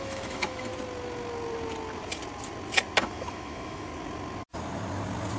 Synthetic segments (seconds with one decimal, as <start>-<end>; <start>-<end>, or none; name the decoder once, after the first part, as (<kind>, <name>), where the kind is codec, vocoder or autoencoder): 0.0-0.7 (autoencoder, DAC-VAE); 3.0-3.9